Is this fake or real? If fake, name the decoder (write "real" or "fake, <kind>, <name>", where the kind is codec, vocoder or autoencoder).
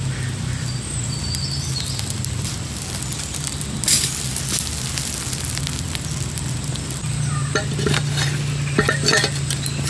real